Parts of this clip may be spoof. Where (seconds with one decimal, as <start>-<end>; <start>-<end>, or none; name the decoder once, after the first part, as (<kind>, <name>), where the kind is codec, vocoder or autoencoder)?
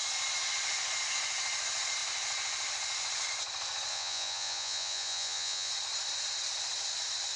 3.9-5.7 (vocoder, Vocos)